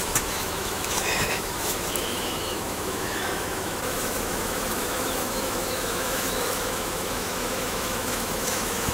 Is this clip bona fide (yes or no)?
no